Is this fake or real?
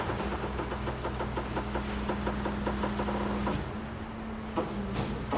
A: real